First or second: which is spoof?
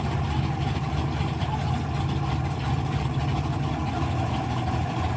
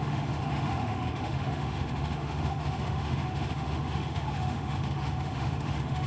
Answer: second